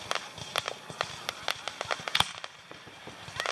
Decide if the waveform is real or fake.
real